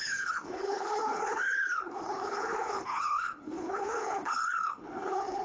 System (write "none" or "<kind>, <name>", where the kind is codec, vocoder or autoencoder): codec, HILCodec